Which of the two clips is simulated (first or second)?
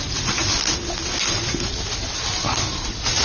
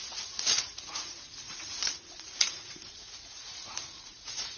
second